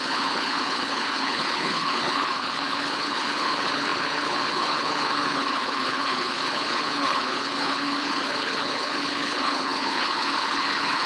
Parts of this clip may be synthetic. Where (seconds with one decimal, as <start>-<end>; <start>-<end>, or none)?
0.0-11.1